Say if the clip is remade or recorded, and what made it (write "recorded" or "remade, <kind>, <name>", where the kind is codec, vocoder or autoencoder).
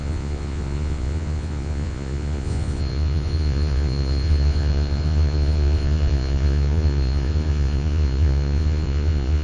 remade, vocoder, Vocos